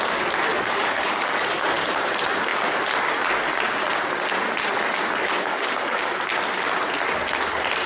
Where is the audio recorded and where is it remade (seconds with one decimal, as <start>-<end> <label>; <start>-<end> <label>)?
0.0-0.5 recorded; 0.5-2.0 remade; 2.0-5.2 recorded; 5.2-6.0 remade; 6.0-7.9 recorded